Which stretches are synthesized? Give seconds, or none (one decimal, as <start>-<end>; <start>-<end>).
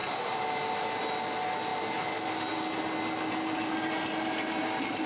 none